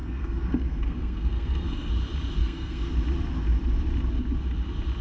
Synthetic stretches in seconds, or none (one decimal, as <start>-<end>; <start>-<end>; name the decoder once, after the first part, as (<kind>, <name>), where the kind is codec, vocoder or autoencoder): 0.0-1.9 (codec, SNAC); 2.4-2.9